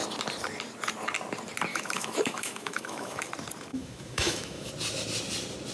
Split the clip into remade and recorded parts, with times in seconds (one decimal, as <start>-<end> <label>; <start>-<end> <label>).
0.0-1.7 recorded; 1.7-3.3 remade; 3.3-3.7 recorded; 3.7-4.7 remade; 4.7-5.7 recorded